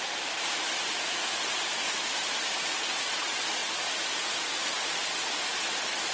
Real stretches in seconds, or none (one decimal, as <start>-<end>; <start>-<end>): 3.6-5.4